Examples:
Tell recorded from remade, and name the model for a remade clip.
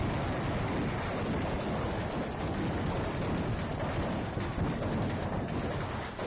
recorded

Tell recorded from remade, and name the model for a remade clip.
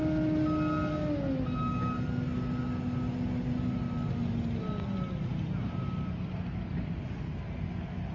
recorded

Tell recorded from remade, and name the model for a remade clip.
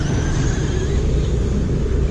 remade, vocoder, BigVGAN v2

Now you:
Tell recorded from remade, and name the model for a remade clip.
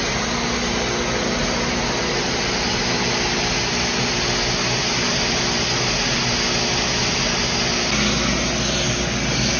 recorded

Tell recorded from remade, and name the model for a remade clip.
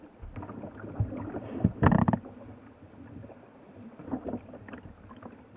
recorded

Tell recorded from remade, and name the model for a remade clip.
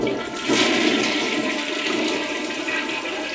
remade, vocoder, BigVGAN v2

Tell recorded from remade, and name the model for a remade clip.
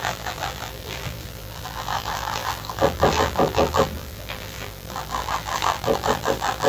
remade, vocoder, BigVGAN v2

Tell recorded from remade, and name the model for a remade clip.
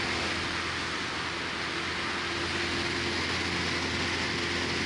recorded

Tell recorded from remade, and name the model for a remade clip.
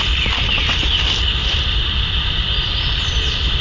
remade, vocoder, BigVGAN v2